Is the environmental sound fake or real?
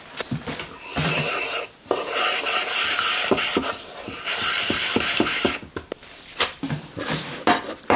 fake